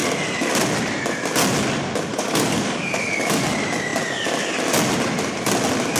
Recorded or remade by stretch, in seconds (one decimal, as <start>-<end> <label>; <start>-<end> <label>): 0.0-2.1 recorded; 2.1-3.5 remade; 3.5-6.0 recorded